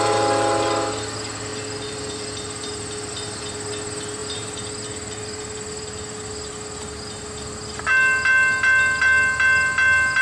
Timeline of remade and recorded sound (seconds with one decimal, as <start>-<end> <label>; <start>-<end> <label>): 0.0-10.2 recorded